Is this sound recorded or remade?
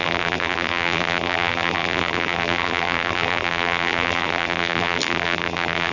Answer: remade